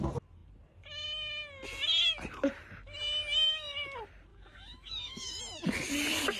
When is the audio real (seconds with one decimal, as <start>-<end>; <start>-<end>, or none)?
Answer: 0.0-4.3; 5.4-6.4